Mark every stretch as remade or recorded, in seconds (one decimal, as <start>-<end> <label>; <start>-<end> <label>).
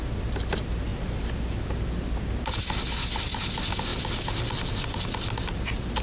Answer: 0.0-6.0 recorded